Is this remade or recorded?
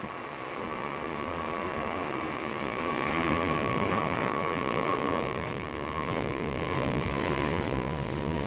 remade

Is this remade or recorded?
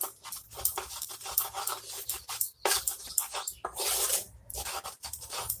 remade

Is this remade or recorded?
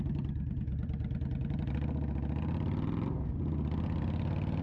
recorded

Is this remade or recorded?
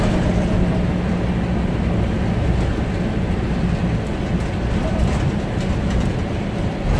recorded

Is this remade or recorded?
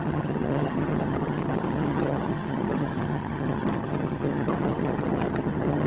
remade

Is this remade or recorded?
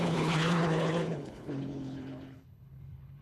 remade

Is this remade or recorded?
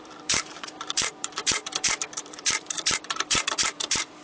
remade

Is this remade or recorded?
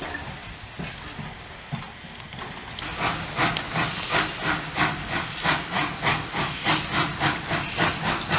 recorded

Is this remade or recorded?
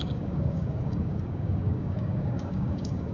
remade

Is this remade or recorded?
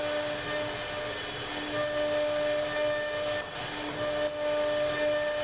recorded